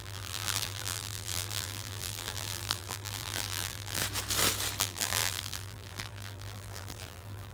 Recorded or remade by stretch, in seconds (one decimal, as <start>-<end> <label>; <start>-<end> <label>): 0.0-4.0 remade; 4.0-4.8 recorded; 4.8-7.5 remade